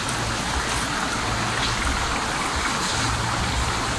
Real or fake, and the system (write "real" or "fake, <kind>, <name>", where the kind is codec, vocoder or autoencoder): real